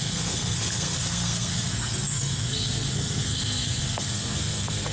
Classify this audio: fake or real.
fake